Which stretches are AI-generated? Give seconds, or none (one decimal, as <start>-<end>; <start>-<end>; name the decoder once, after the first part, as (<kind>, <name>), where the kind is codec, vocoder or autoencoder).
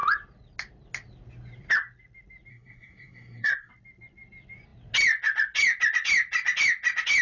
2.5-3.7 (codec, SNAC)